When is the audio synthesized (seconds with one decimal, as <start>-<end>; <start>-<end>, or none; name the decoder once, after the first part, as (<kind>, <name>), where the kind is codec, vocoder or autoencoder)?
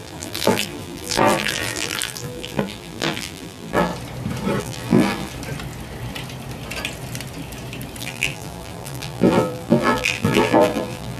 0.0-3.9 (vocoder, BigVGAN v2); 4.6-5.3; 8.0-11.2